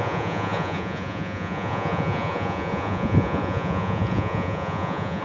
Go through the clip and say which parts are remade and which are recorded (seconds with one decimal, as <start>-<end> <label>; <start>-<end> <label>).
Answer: 0.0-5.2 remade